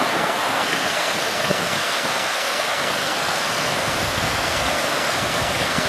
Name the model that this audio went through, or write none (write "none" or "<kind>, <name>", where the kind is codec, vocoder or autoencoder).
codec, SNAC